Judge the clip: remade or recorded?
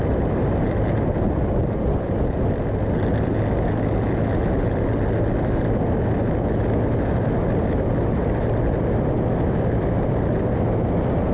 recorded